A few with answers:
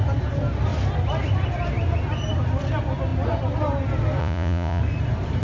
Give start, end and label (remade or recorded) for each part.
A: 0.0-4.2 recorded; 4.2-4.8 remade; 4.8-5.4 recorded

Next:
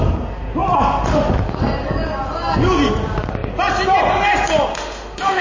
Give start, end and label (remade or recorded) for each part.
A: 0.0-4.7 recorded; 4.7-5.4 remade

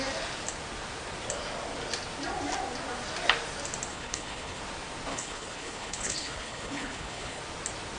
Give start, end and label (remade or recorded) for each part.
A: 0.0-3.9 recorded; 3.9-4.6 remade; 4.6-5.1 recorded; 5.1-7.4 remade; 7.4-8.0 recorded

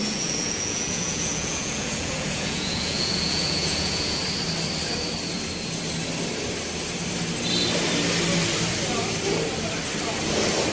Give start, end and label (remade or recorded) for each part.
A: 0.0-4.2 remade; 4.2-10.7 recorded

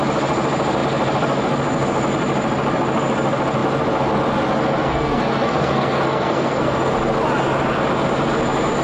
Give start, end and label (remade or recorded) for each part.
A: 0.0-4.8 recorded; 4.8-6.9 remade; 6.9-8.8 recorded

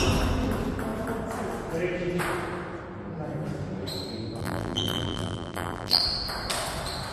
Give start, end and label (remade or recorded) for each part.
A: 0.0-4.4 recorded; 4.4-6.0 remade; 6.0-7.1 recorded